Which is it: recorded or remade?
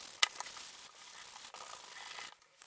recorded